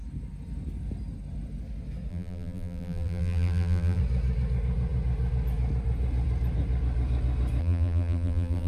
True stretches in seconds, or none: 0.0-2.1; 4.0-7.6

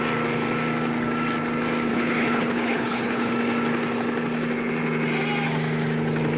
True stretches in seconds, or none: 0.0-1.9; 3.3-6.4

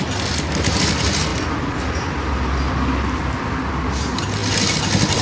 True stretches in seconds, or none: 0.0-5.2